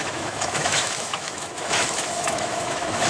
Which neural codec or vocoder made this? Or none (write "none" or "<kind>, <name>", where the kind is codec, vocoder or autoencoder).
autoencoder, DAC-VAE